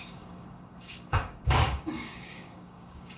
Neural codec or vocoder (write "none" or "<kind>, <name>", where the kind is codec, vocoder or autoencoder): codec, DAC